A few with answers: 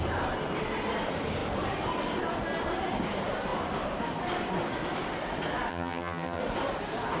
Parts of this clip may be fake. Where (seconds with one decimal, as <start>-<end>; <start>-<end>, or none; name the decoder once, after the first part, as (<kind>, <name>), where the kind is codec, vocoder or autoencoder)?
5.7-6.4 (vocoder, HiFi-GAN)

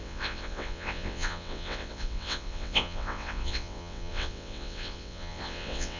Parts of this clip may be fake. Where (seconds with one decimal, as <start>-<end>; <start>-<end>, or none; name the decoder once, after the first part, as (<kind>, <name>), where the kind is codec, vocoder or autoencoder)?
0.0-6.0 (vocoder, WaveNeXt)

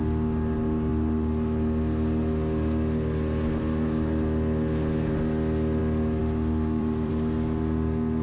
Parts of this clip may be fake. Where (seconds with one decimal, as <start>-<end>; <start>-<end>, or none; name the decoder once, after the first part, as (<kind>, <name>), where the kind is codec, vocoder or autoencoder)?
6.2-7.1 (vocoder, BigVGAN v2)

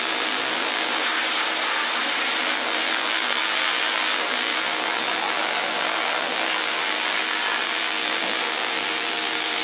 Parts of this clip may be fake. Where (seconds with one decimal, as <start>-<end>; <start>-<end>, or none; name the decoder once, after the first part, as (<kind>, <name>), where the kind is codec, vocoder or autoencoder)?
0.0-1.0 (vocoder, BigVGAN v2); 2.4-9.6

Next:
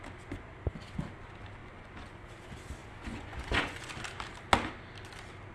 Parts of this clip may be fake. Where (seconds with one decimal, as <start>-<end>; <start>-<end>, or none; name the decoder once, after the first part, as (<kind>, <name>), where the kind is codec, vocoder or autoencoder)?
1.6-2.3 (vocoder, Vocos); 2.8-3.9